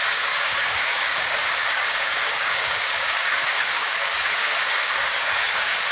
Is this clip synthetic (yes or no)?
yes